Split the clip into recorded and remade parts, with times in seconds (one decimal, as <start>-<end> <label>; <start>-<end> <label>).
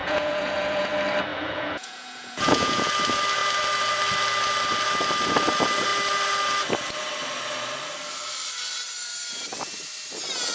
0.0-0.9 remade; 0.9-1.3 recorded; 1.3-2.9 remade; 2.9-10.5 recorded